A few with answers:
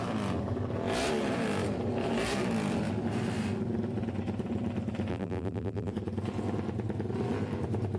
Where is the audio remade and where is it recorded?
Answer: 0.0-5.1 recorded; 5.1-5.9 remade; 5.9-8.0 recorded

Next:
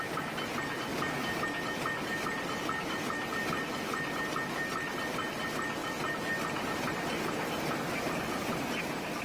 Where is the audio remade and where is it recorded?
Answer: 0.0-9.2 recorded

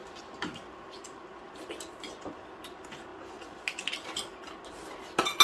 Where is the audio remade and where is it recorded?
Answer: 0.0-5.4 recorded

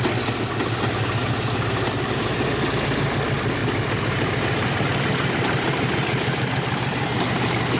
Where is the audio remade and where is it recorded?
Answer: 0.0-1.2 recorded; 1.2-2.3 remade; 2.3-3.6 recorded; 3.6-7.8 remade

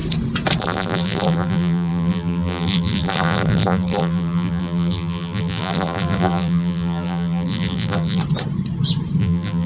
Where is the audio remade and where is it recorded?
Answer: 0.0-0.6 recorded; 0.6-8.2 remade; 8.2-9.2 recorded; 9.2-9.7 remade

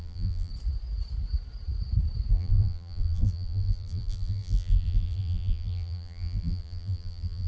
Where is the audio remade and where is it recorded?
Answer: 0.0-0.5 remade; 0.5-2.3 recorded; 2.3-7.5 remade

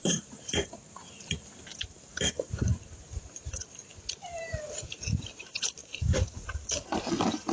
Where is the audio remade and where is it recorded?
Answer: 0.0-1.0 remade; 1.0-1.8 recorded; 1.8-7.5 remade

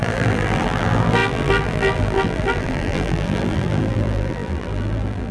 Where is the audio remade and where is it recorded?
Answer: 0.0-5.3 remade